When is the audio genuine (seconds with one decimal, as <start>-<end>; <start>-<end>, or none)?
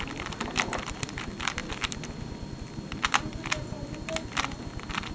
0.0-5.1